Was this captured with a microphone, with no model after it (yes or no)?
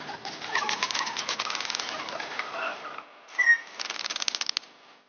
yes